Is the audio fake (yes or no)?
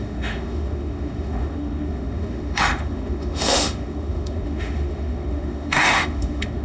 yes